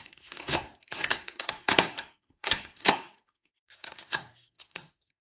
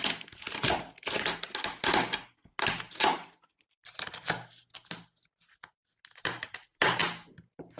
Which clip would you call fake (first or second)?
first